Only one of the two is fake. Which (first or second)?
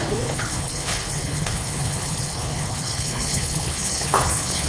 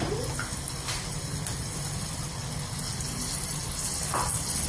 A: first